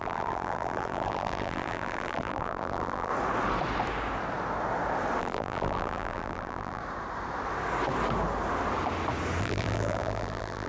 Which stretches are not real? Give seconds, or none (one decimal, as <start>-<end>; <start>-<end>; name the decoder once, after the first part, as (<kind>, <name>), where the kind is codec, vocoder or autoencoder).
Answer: 0.0-3.1 (vocoder, BigVGAN v2); 5.2-6.8; 9.4-10.7